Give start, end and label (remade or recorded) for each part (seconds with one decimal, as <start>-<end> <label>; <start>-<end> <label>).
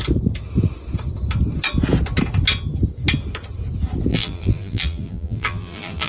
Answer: 0.0-4.1 recorded; 4.1-6.1 remade